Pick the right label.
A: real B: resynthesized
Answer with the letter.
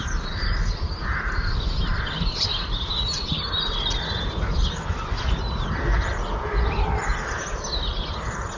A